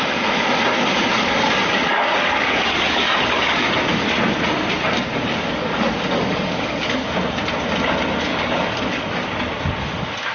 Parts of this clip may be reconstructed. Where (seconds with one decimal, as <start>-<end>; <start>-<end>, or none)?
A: 0.7-3.8; 5.1-7.1; 8.3-9.5